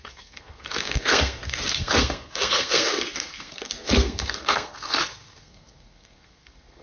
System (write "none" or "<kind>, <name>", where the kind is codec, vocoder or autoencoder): codec, SNAC